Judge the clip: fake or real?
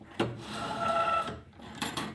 fake